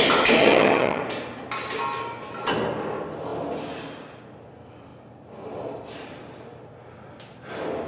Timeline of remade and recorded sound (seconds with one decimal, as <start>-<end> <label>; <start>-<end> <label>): 0.0-0.4 recorded; 0.4-1.0 remade; 1.0-7.9 recorded